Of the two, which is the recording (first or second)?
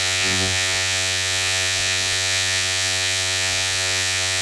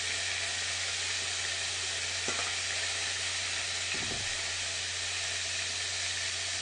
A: second